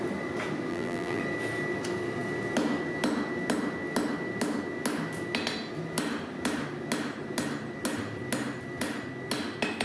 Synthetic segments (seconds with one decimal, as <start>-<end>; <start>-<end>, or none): 0.7-1.2